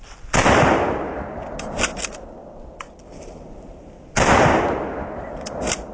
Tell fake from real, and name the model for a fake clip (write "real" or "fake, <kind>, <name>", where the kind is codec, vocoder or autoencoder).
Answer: real